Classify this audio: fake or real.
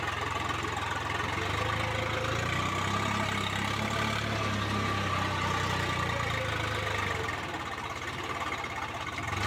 real